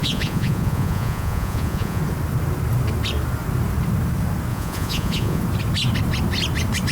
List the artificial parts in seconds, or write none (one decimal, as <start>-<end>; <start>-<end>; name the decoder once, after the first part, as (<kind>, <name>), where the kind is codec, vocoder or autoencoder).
0.0-2.0 (vocoder, Vocos); 4.5-5.4